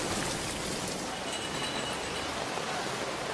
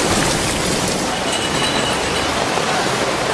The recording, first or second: first